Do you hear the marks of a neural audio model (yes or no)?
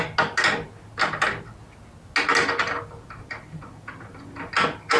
no